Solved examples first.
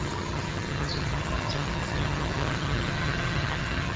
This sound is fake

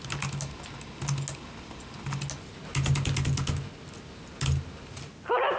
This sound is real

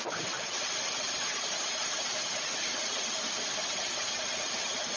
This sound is real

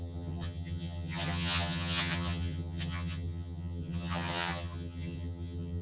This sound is fake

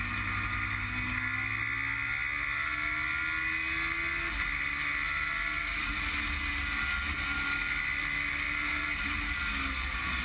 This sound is real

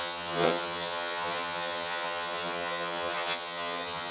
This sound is fake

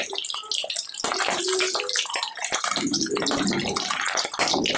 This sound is real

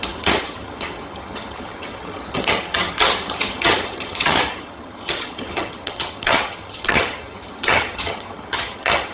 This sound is fake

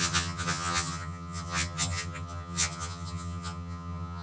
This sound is fake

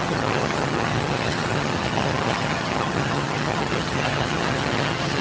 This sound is fake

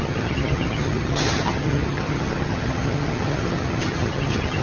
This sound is fake